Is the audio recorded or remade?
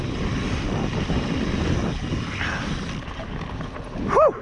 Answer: recorded